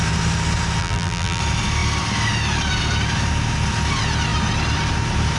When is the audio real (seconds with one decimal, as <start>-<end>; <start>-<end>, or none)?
0.0-0.8; 1.4-5.4